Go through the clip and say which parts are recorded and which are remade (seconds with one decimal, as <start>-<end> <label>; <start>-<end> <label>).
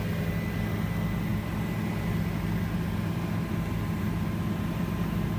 0.0-5.4 recorded